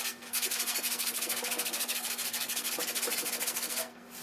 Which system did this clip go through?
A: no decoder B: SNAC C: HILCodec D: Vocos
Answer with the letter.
B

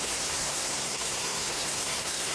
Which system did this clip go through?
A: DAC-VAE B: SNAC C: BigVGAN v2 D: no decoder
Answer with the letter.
B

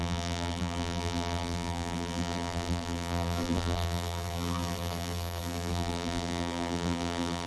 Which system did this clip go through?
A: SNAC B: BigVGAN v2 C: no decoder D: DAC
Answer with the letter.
B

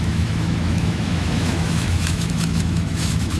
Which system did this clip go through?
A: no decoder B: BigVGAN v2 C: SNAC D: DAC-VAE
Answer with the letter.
D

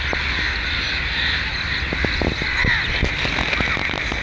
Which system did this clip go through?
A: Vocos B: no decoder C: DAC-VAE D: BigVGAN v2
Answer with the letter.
B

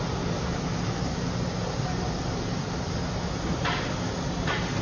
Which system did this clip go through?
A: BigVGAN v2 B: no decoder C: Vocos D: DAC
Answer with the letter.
B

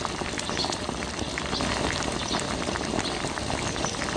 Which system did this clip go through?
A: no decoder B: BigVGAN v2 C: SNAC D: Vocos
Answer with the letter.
B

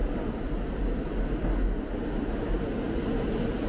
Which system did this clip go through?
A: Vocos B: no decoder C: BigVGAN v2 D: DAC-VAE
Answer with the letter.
B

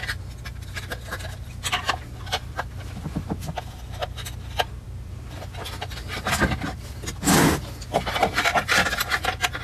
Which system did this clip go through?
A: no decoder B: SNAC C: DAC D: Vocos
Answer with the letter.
A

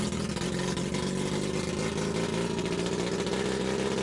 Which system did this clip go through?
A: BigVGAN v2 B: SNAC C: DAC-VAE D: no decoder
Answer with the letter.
D